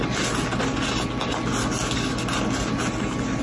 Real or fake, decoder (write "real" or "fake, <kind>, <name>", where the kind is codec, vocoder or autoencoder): real